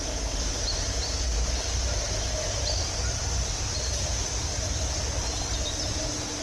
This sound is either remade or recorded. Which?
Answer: recorded